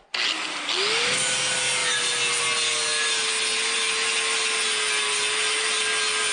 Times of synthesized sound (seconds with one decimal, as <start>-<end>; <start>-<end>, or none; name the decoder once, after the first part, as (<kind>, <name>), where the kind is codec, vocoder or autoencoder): none